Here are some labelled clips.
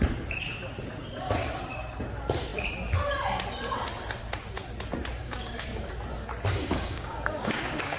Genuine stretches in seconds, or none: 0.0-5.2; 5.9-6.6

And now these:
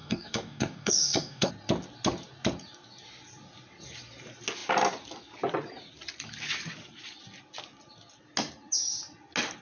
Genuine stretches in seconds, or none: 1.5-9.6

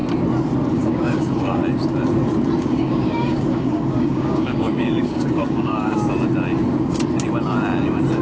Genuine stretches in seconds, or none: 0.0-0.7; 1.6-2.6; 6.0-8.2

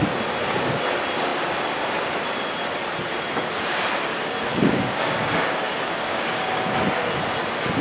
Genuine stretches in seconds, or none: 0.0-4.5; 6.8-7.8

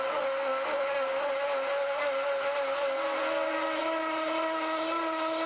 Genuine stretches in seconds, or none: 0.0-5.5

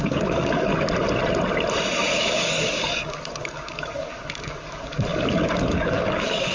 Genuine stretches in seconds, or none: 0.7-2.1

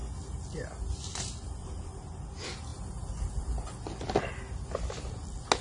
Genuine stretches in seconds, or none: 0.0-5.6